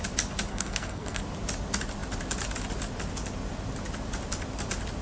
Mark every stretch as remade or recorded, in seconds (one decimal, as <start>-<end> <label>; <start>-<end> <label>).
0.0-0.5 recorded; 0.5-1.2 remade; 1.2-5.0 recorded